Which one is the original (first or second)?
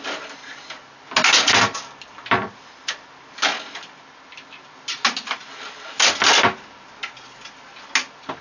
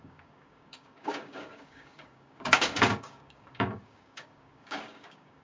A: first